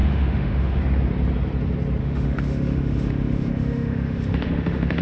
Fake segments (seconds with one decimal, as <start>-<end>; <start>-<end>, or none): 0.0-0.8; 2.0-5.0